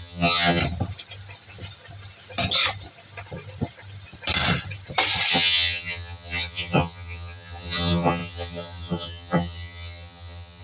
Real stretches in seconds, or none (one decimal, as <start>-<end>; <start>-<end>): 0.6-5.3